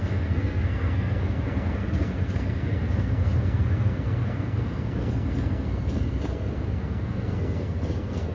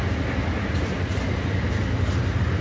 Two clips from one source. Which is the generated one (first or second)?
first